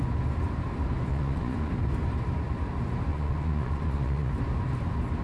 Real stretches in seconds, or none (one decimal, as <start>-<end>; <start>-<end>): 0.0-1.1; 1.7-3.1; 4.3-5.2